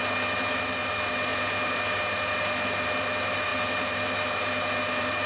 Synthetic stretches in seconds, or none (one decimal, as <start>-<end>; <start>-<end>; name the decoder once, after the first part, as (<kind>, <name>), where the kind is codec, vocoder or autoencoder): none

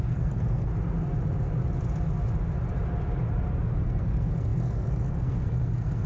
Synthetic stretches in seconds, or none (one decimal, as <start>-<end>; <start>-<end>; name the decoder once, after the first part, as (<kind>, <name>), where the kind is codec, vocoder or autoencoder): 0.0-0.7 (codec, SNAC); 3.6-6.1

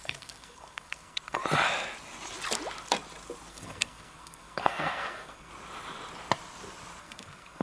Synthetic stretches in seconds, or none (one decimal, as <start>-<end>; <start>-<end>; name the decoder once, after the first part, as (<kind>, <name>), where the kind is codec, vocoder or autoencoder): 0.0-1.4 (codec, SNAC); 3.5-5.5; 7.0-7.6

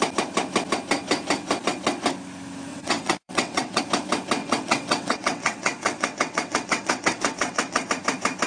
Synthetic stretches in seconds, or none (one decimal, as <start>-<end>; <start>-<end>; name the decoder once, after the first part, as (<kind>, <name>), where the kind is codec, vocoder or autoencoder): 2.7-3.8 (vocoder, WaveNeXt); 4.4-7.9

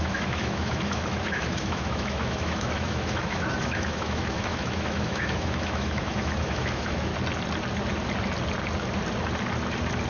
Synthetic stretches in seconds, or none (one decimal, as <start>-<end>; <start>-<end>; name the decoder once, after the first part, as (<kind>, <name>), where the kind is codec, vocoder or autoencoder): 0.0-7.1 (autoencoder, DAC-VAE)

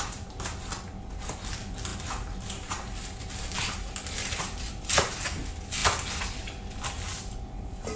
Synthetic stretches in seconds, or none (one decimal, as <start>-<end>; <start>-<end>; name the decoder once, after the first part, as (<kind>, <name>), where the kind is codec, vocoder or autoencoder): none